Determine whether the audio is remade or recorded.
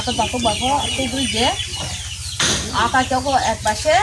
recorded